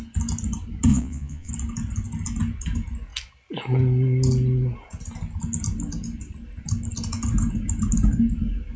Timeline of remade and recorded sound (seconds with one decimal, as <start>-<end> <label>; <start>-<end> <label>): 0.0-0.9 recorded; 0.9-1.5 remade; 1.5-8.8 recorded